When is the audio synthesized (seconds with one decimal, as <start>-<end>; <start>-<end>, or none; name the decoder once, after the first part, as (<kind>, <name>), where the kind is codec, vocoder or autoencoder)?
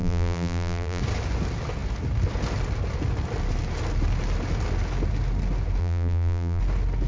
0.0-1.0 (vocoder, BigVGAN v2); 5.8-6.6